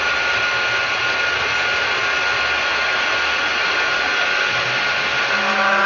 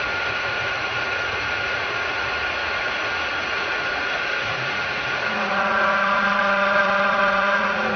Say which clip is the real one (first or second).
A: first